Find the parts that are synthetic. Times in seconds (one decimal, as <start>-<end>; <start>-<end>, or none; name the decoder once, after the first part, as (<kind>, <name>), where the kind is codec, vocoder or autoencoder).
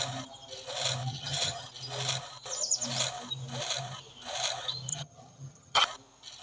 1.1-1.7 (vocoder, HiFi-GAN); 4.9-5.8